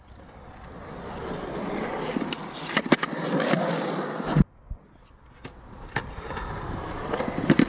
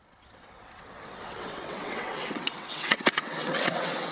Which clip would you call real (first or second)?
first